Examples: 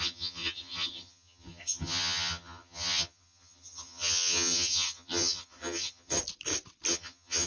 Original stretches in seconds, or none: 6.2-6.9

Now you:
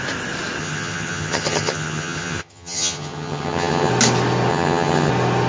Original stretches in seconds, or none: 0.0-0.6; 3.9-4.5; 5.1-5.5

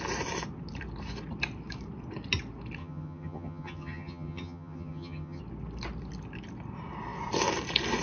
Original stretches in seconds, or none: 0.0-2.8; 5.4-8.0

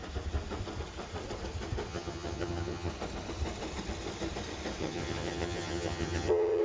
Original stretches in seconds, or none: 0.0-1.9; 2.9-4.8